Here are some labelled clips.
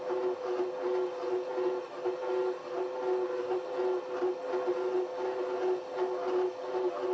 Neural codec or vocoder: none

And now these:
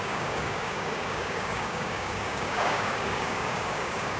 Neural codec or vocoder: codec, DAC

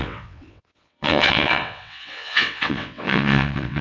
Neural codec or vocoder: vocoder, WaveNeXt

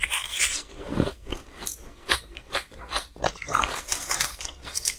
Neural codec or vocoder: codec, SNAC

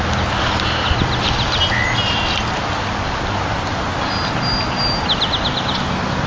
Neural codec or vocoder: none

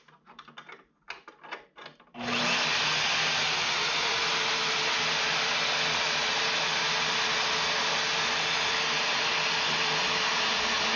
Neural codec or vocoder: none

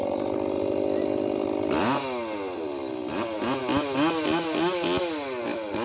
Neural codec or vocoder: none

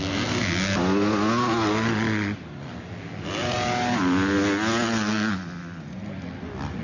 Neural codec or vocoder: none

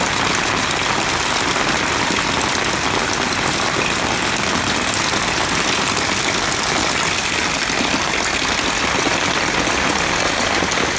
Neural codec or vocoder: none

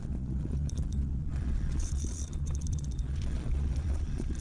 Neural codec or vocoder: vocoder, Vocos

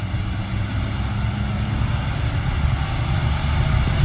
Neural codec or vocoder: none